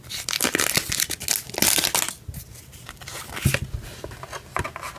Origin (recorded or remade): recorded